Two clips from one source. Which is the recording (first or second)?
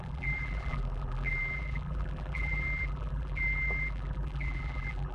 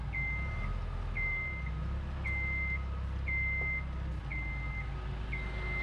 second